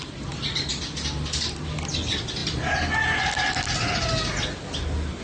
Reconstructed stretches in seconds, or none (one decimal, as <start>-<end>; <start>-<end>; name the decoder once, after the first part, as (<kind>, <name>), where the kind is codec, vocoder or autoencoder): none